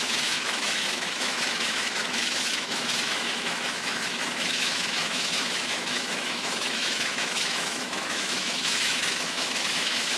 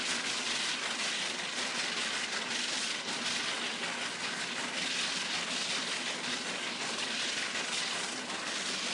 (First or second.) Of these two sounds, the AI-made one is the first